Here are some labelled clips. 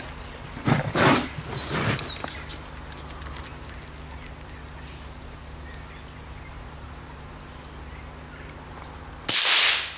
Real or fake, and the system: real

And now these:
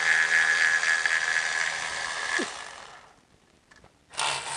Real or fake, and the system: real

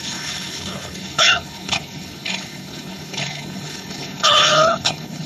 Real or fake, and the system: fake, codec, HILCodec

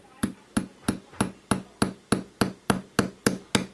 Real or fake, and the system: real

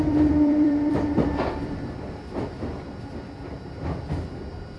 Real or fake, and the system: fake, vocoder, BigVGAN v2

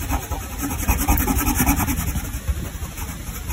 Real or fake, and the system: real